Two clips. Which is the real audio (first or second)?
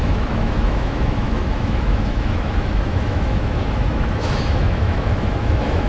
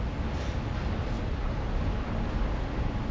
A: second